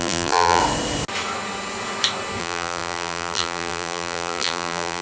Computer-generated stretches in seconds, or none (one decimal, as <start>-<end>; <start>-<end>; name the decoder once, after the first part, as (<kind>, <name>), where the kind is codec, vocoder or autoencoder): 0.0-0.6 (vocoder, BigVGAN v2); 2.4-5.0